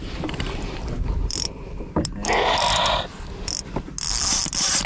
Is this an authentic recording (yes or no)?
yes